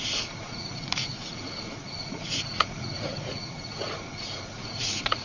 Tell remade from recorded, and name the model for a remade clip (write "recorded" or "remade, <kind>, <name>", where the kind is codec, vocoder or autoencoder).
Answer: remade, vocoder, Vocos